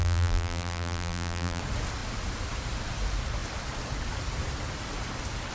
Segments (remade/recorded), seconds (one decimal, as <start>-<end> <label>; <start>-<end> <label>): 0.0-1.6 remade; 1.6-5.5 recorded